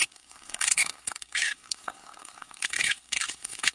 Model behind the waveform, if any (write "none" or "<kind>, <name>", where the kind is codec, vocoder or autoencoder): codec, SNAC